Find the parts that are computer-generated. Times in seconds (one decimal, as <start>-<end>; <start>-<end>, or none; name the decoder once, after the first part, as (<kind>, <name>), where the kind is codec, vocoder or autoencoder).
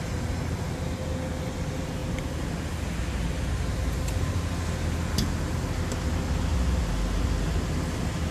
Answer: none